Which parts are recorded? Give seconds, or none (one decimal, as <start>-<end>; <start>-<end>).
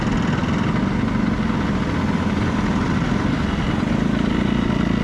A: 0.0-5.0